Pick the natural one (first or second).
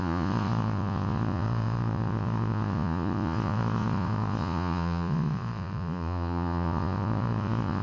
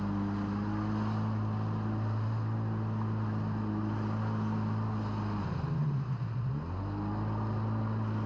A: second